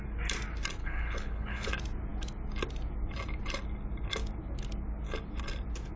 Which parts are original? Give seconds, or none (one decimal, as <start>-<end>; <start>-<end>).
0.0-0.8; 1.7-6.0

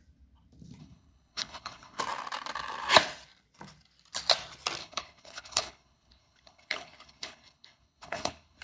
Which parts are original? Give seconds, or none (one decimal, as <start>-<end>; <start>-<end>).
0.0-0.8; 2.0-4.8